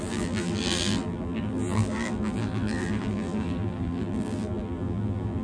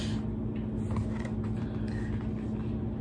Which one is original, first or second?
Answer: second